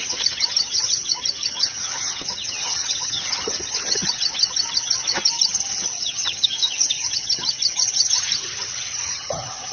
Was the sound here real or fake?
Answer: fake